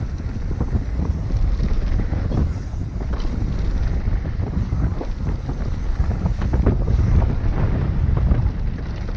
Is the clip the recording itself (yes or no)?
yes